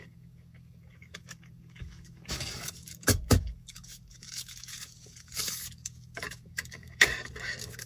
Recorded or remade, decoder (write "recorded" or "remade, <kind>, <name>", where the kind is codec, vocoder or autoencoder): remade, codec, DAC